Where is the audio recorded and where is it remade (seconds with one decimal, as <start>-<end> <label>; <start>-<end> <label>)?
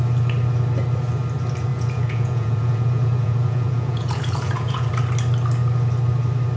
0.0-1.7 recorded; 1.7-4.9 remade; 4.9-6.6 recorded